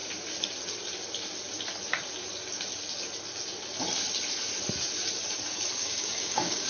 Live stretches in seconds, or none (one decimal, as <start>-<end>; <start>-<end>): 0.0-5.8